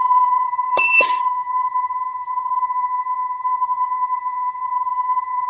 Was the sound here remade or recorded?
remade